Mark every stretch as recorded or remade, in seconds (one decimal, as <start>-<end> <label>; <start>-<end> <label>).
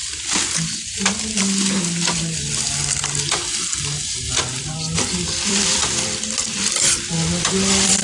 0.0-4.3 recorded; 4.3-8.0 remade